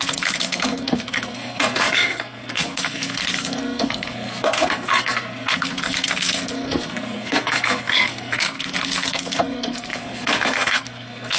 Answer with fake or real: fake